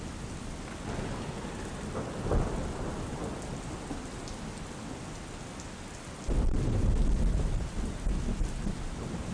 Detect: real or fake real